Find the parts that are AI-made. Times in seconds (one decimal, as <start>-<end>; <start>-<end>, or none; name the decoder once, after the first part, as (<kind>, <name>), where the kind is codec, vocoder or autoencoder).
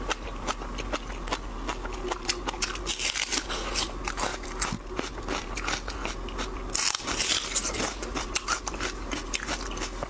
none